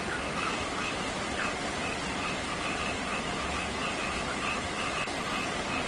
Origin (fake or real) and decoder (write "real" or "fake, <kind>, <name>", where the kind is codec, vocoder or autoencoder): real